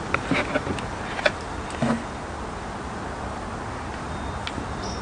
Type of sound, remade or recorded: recorded